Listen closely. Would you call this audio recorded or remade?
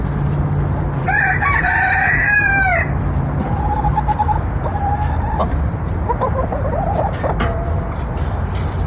remade